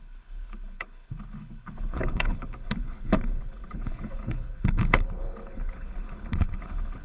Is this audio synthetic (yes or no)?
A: yes